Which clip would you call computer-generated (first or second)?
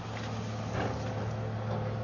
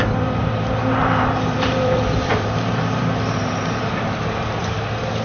second